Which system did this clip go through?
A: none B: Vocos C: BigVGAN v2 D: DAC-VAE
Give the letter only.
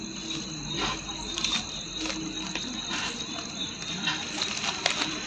A